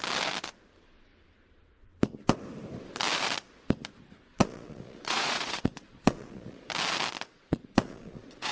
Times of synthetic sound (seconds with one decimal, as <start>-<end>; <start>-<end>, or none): 4.3-6.7; 7.3-8.5